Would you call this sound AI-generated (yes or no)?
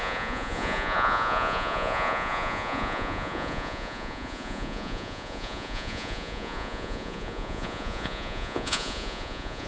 yes